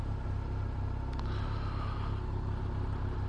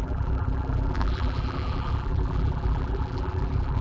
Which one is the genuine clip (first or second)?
first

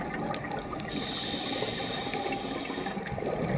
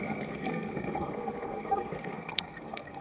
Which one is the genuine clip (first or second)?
first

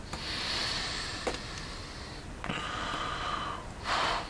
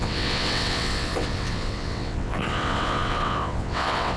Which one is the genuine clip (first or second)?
first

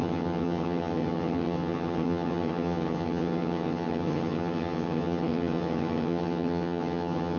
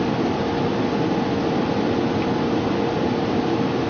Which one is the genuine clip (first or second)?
second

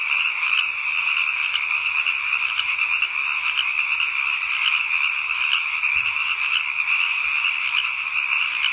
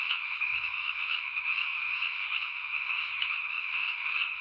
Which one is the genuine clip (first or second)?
first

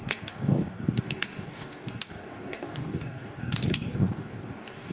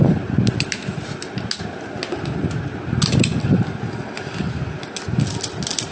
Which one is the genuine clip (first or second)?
second